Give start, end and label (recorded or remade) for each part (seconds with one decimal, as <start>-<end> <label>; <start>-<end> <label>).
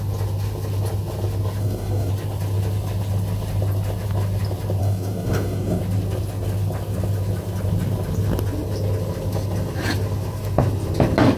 0.0-1.6 recorded; 1.6-2.1 remade; 2.1-4.8 recorded; 4.8-5.8 remade; 5.8-11.4 recorded